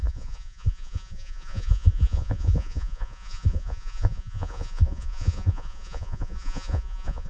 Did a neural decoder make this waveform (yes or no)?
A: yes